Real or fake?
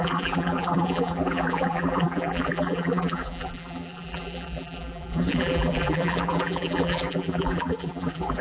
fake